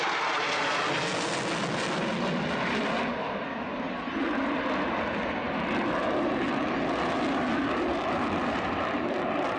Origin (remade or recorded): recorded